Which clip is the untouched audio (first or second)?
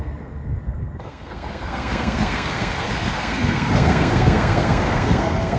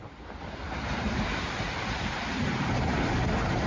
second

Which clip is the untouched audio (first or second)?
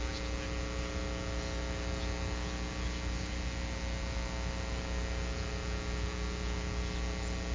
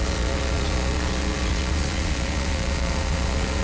first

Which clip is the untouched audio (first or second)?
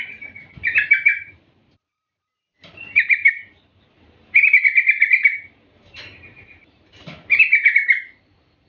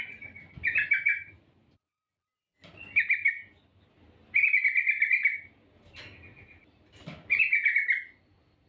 second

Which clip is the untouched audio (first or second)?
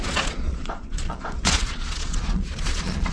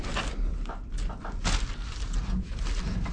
second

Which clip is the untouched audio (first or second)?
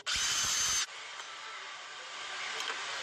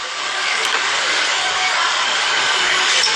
first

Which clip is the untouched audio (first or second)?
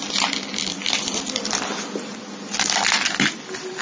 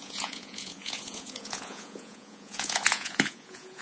first